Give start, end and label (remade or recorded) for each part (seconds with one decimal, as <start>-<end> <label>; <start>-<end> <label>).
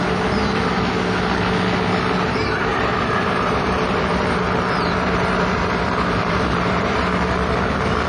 0.0-2.7 recorded; 2.7-7.0 remade; 7.0-8.1 recorded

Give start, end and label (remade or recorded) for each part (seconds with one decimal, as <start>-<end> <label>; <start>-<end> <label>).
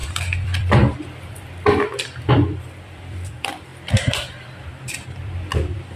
0.0-3.7 remade; 3.7-4.7 recorded; 4.7-6.0 remade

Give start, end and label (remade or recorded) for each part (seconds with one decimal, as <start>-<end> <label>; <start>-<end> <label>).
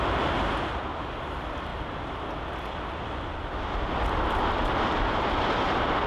0.0-6.1 recorded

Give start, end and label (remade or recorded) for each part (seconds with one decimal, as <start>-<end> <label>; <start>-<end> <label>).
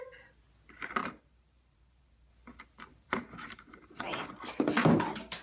0.0-1.0 recorded; 1.0-2.3 remade; 2.3-2.9 recorded; 2.9-4.3 remade; 4.3-5.4 recorded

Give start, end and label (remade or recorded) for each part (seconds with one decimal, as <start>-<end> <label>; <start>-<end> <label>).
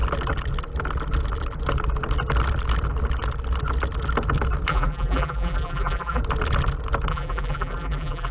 0.0-4.7 recorded; 4.7-6.2 remade; 6.2-7.1 recorded; 7.1-8.3 remade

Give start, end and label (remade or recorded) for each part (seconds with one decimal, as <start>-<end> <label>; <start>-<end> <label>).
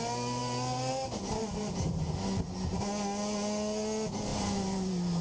0.0-1.4 recorded; 1.4-2.0 remade; 2.0-4.3 recorded; 4.3-5.2 remade